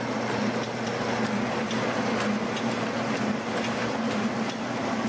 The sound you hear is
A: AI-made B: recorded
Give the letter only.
B